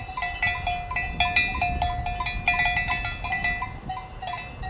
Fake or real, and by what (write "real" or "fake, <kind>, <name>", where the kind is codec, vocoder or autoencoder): real